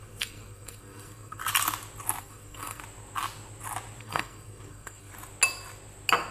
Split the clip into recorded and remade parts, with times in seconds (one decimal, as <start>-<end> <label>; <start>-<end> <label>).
0.0-1.4 remade; 1.4-2.2 recorded; 2.2-2.8 remade; 2.8-4.0 recorded; 4.0-5.1 remade; 5.1-6.3 recorded